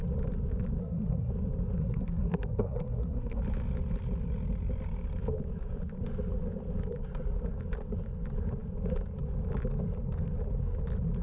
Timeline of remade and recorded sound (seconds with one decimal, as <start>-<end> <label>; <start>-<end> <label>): 0.0-0.8 recorded; 0.8-1.3 remade; 1.3-1.8 recorded; 1.8-3.4 remade; 3.4-11.2 recorded